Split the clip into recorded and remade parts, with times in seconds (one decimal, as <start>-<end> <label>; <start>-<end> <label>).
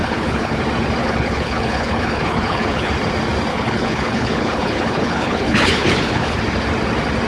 0.0-0.6 remade; 0.6-1.0 recorded; 1.0-2.9 remade; 2.9-3.5 recorded; 3.5-6.4 remade; 6.4-7.3 recorded